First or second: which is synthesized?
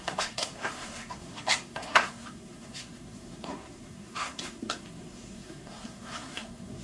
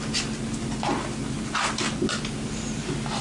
first